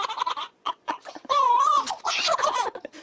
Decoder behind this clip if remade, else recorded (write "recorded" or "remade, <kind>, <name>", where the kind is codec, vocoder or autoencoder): remade, vocoder, Vocos